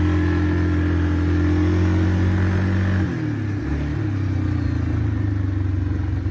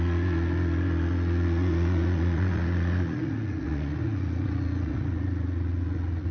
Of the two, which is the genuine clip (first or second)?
first